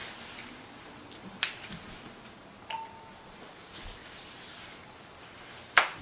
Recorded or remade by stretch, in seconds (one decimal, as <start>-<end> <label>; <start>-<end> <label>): 0.0-6.0 recorded